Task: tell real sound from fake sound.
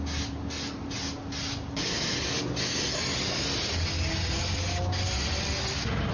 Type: real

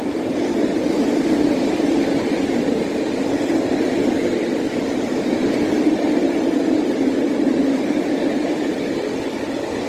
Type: real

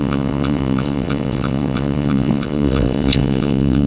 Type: fake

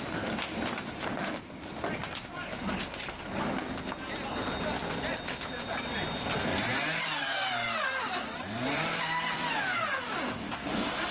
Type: real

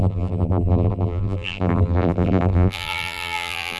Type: fake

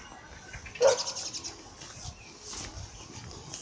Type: real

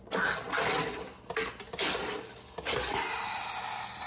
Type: real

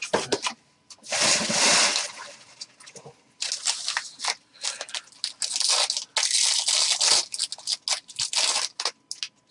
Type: real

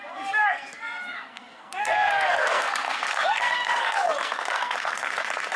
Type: fake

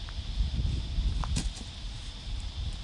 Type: real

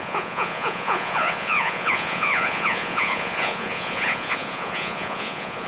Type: fake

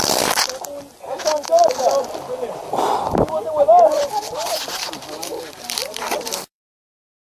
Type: fake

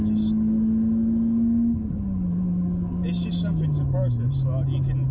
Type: real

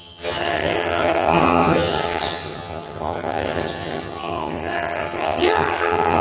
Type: fake